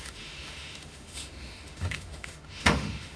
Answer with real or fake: fake